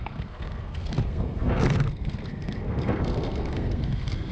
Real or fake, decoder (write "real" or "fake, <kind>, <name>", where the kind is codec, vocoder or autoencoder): fake, codec, SNAC